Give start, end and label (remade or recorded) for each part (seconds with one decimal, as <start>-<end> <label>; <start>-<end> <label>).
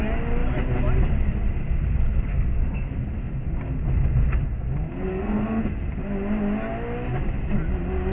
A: 0.0-2.3 recorded; 2.3-2.9 remade; 2.9-5.1 recorded; 5.1-5.6 remade; 5.6-8.1 recorded